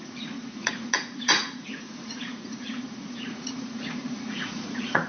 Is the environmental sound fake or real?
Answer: fake